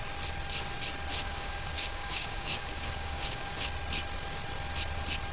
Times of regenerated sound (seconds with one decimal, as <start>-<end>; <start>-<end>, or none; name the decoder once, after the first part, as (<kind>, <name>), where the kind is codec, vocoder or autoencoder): 1.1-3.7 (codec, DAC)